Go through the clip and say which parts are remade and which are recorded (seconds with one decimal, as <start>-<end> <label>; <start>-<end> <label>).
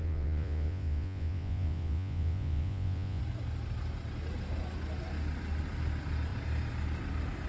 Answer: 0.0-3.2 remade; 3.2-7.5 recorded